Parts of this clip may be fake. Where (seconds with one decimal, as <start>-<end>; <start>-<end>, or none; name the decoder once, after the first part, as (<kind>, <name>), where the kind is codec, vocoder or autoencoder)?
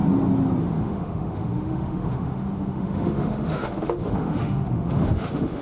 0.6-5.6 (autoencoder, DAC-VAE)